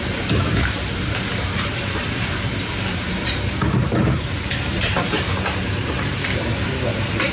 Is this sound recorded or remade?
remade